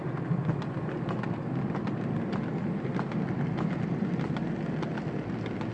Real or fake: real